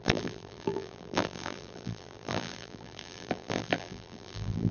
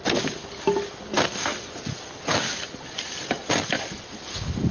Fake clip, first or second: first